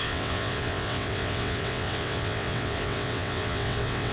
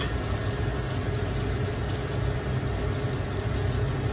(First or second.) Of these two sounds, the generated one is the first